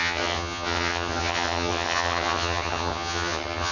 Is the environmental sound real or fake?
fake